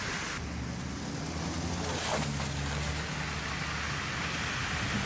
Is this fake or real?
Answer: real